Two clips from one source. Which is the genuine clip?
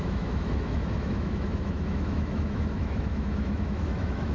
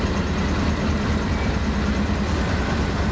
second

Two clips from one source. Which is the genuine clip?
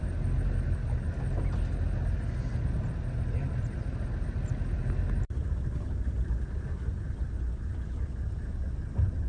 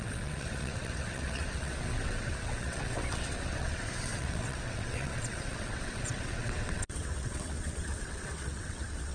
first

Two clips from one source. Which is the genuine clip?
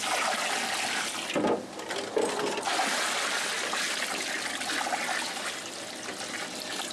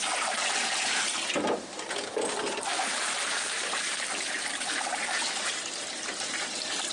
first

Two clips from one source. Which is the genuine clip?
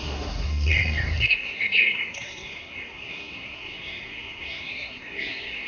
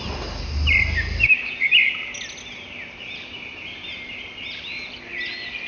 second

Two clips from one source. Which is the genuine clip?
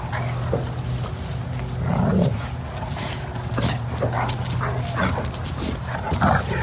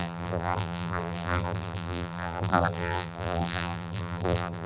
first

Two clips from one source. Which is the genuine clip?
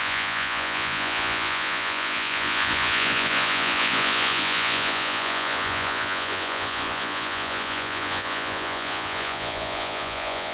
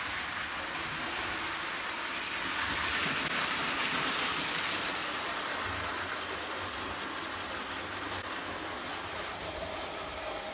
second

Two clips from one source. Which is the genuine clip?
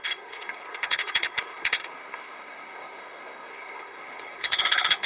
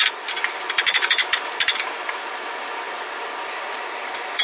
second